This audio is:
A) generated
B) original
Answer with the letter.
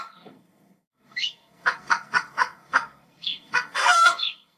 A